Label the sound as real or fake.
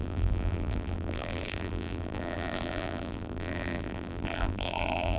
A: fake